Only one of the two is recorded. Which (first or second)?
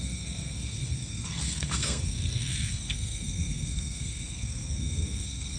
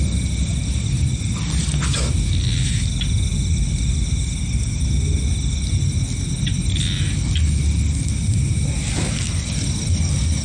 second